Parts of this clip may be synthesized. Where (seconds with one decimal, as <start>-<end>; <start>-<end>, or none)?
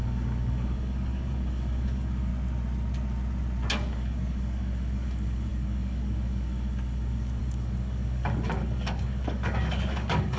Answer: 0.0-2.3; 3.9-10.4